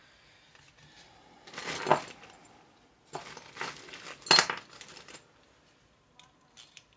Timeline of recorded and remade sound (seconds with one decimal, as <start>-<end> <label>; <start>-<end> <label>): 0.0-7.0 recorded